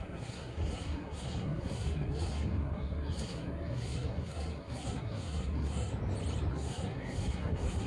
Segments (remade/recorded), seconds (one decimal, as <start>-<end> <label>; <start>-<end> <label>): 0.0-5.9 remade; 5.9-6.5 recorded; 6.5-7.9 remade